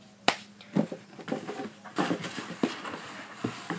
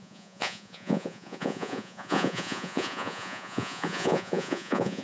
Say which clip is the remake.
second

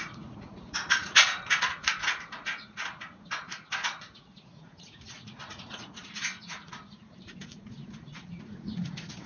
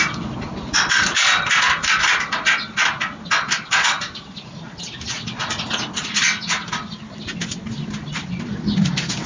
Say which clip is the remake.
first